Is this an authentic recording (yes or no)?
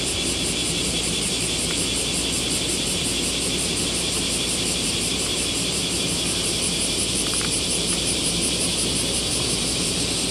no